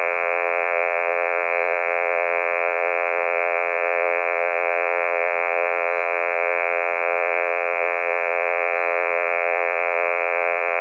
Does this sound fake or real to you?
fake